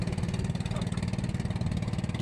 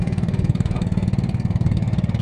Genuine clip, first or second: first